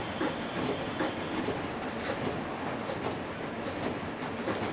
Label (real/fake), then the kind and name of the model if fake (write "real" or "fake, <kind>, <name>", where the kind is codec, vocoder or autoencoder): real